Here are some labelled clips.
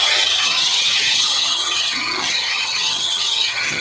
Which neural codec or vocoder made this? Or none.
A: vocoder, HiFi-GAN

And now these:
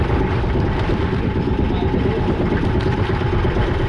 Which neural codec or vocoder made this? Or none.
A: none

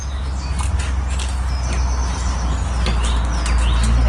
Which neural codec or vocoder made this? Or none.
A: none